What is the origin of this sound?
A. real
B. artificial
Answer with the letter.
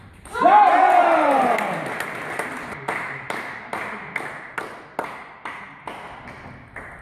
A